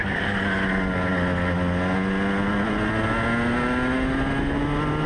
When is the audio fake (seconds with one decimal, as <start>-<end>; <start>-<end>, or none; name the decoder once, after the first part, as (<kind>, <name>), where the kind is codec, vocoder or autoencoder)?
none